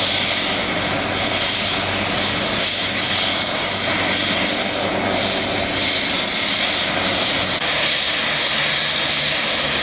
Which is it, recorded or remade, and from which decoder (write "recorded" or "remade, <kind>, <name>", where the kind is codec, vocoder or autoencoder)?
recorded